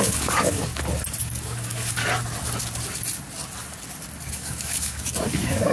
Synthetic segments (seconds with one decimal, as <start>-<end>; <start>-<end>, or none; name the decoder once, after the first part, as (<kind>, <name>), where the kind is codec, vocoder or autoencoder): 0.0-0.7 (codec, DAC); 1.2-2.0; 4.3-5.7